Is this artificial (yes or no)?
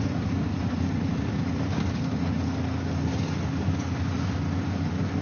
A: no